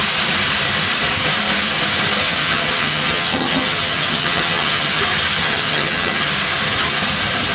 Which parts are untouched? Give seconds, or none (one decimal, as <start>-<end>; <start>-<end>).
0.0-2.2; 5.0-5.4; 6.3-7.5